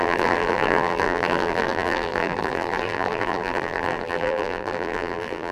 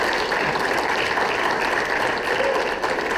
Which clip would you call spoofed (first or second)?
first